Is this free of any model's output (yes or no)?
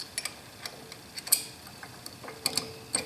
yes